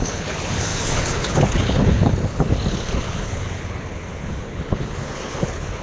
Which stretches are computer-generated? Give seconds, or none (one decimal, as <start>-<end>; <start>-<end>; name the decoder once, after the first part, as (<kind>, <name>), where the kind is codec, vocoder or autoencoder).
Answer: 0.0-5.8 (codec, HILCodec)